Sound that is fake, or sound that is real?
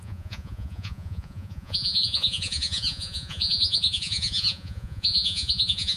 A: fake